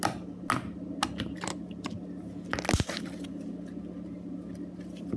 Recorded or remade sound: recorded